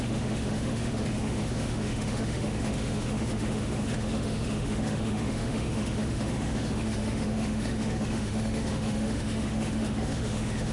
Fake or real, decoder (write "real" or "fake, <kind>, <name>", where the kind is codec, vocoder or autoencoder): fake, autoencoder, DAC-VAE